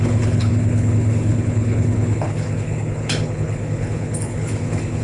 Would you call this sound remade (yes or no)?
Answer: yes